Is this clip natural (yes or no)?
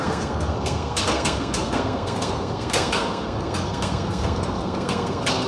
no